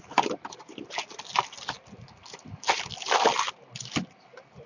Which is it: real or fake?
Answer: real